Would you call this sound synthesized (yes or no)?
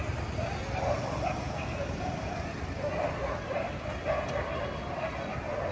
no